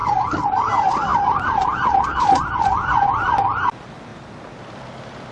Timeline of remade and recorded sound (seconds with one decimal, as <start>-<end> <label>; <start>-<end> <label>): 0.0-5.3 remade